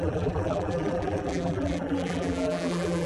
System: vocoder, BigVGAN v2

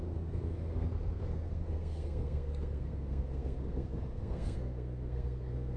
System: codec, SNAC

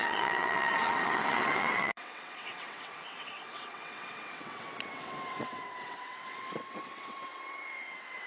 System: vocoder, WaveNeXt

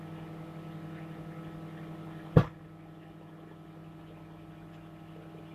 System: none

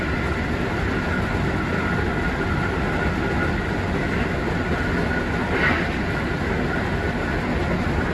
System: none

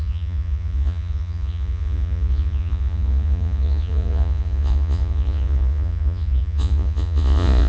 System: vocoder, Vocos